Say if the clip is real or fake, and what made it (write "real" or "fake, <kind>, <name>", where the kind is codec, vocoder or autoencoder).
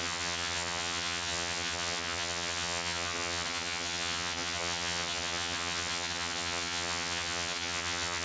fake, vocoder, HiFi-GAN